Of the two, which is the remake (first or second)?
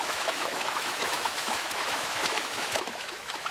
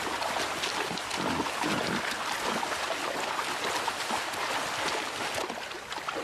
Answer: first